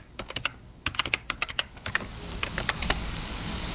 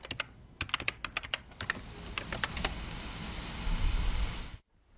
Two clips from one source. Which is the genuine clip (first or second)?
second